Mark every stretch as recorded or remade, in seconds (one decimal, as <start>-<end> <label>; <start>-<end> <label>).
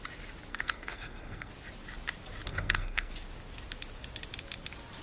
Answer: 0.0-0.5 recorded; 0.5-1.5 remade; 1.5-2.5 recorded; 2.5-3.1 remade; 3.1-5.0 recorded